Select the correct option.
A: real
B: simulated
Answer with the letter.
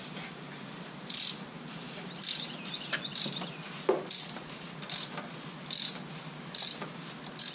A